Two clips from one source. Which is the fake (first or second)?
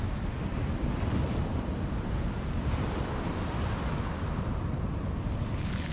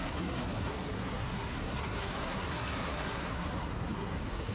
second